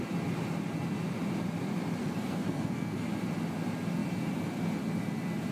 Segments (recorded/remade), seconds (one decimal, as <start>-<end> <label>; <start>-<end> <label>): 0.0-2.0 recorded; 2.0-3.1 remade; 3.1-5.5 recorded